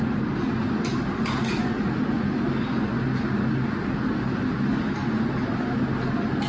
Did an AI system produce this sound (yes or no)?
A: no